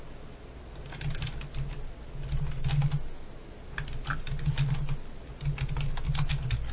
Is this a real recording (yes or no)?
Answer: yes